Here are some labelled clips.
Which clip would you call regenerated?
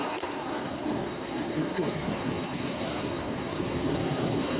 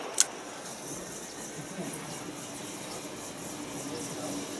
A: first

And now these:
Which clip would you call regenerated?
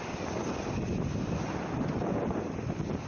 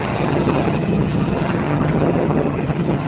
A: second